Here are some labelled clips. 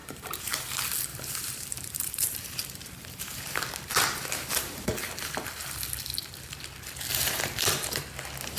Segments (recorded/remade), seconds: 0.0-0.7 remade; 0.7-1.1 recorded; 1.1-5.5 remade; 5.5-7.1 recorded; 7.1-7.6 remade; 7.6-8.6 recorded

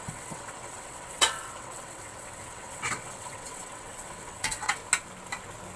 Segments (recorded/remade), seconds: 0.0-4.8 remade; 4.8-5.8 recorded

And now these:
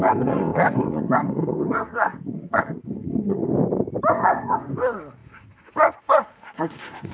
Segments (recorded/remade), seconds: 0.0-3.5 remade; 3.5-4.1 recorded; 4.1-7.1 remade

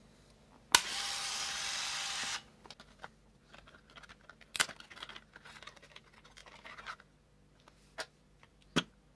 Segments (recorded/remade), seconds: 0.0-9.2 recorded